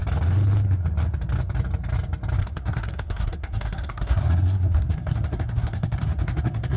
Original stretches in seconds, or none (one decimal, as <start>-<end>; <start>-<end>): 0.0-2.4